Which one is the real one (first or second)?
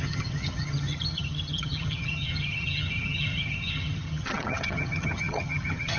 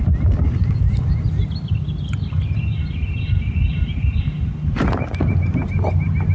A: second